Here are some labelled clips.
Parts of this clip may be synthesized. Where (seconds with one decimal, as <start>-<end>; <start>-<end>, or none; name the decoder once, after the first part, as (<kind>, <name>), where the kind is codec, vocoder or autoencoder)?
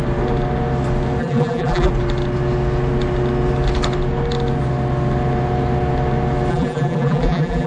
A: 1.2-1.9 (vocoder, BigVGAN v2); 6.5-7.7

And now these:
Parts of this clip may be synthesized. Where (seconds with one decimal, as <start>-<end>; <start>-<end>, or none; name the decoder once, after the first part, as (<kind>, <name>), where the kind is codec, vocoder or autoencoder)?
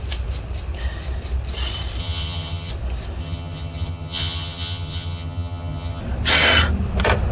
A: 2.0-2.7 (vocoder, HiFi-GAN); 3.2-6.0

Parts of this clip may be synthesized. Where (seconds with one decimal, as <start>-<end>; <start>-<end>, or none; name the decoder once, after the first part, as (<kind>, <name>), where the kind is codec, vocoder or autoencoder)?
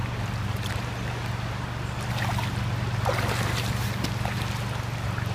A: none